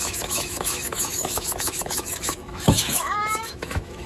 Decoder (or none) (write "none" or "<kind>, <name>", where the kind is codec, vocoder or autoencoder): autoencoder, DAC-VAE